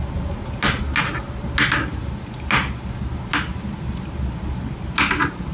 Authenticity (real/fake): real